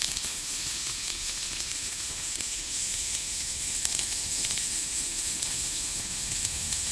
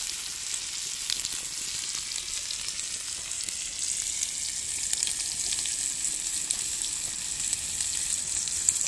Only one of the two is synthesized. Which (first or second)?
first